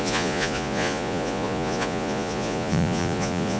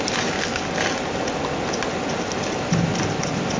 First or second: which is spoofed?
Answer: first